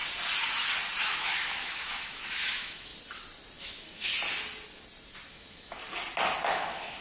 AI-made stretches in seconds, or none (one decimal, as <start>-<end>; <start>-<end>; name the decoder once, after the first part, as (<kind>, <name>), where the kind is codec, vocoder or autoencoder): 1.0-2.9 (autoencoder, DAC-VAE); 3.6-4.1; 5.3-5.8; 6.5-7.0